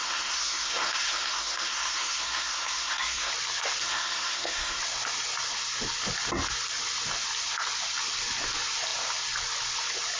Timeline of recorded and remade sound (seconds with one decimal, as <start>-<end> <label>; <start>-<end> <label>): 0.0-3.3 remade; 3.3-3.8 recorded; 3.8-4.8 remade; 4.8-10.2 recorded